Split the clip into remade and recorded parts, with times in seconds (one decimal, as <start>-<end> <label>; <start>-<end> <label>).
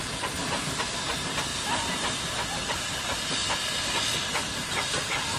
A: 0.0-5.4 recorded